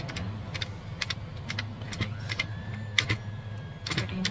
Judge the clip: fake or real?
real